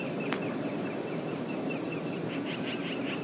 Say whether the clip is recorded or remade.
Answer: recorded